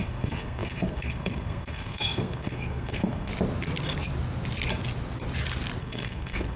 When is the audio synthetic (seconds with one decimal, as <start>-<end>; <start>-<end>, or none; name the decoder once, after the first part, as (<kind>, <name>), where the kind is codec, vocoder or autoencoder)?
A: 0.0-3.3 (codec, SNAC); 5.8-6.6